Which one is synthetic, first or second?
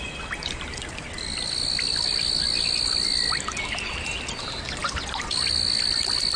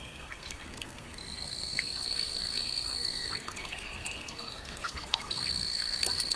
second